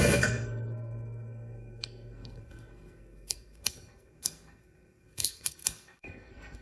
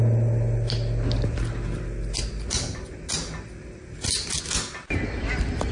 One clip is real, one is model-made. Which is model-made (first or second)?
first